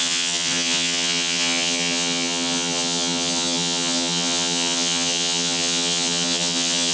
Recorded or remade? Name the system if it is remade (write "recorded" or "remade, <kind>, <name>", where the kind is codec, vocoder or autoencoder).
remade, vocoder, HiFi-GAN